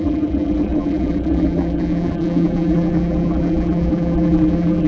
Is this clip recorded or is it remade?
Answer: remade